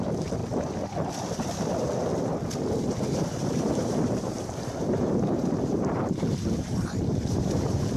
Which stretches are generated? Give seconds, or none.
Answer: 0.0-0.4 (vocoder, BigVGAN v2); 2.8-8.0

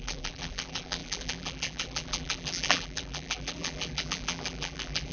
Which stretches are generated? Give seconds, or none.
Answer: 0.0-5.1 (vocoder, BigVGAN v2)

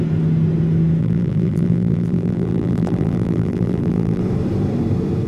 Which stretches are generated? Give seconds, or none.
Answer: 1.0-4.2 (vocoder, BigVGAN v2)